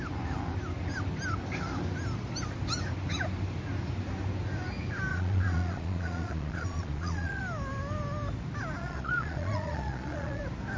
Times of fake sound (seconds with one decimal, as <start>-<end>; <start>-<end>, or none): 5.1-7.4; 8.8-10.4